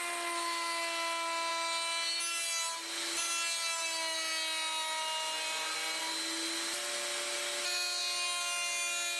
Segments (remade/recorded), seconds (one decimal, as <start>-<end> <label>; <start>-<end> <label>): 0.0-9.2 recorded